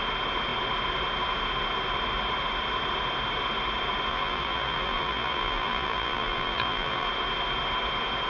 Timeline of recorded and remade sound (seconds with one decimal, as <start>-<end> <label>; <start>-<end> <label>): 0.0-4.1 recorded; 4.1-7.1 remade; 7.1-8.3 recorded